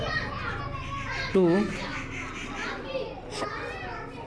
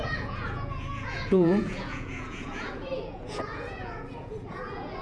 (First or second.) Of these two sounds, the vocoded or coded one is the second